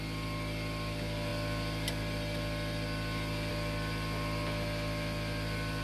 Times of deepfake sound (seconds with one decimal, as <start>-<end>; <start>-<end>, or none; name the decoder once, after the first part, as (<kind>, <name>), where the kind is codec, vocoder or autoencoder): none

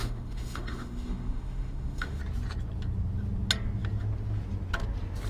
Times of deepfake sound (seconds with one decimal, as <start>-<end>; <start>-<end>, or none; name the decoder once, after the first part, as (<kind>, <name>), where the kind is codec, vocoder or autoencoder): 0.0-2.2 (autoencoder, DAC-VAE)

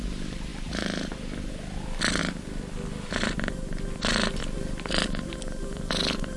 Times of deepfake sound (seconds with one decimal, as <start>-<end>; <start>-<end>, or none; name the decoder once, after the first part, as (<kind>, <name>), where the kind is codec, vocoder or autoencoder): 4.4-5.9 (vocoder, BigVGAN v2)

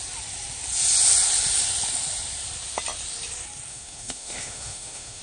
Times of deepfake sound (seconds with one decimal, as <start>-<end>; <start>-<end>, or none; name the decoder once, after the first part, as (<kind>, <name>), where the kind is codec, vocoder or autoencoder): 3.7-5.2 (autoencoder, DAC-VAE)

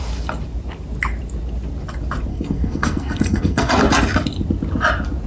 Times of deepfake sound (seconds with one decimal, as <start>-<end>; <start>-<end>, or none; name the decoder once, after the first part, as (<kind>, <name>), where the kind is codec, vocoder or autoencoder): 2.3-3.7 (codec, SNAC)

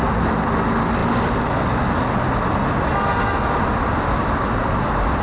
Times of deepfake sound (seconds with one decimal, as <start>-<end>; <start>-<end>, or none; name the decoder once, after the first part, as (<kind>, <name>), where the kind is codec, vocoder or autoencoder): none

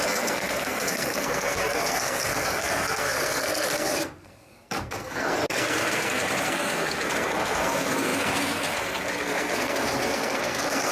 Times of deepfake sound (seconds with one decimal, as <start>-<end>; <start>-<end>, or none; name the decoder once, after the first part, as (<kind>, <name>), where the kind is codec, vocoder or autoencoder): 0.0-10.9 (codec, SNAC)